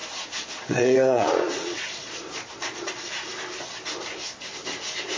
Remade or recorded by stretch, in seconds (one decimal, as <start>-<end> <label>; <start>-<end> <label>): 0.0-2.9 remade; 2.9-5.2 recorded